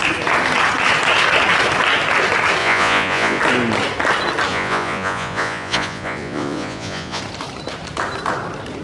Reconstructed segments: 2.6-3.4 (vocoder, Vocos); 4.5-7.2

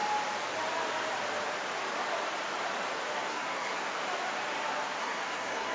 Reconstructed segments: 3.3-3.8 (codec, SNAC); 5.0-5.7